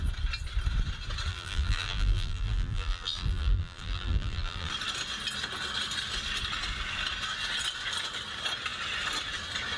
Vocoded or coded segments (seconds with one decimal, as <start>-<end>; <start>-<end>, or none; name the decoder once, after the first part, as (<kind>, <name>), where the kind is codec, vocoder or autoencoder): 1.3-4.7 (vocoder, BigVGAN v2)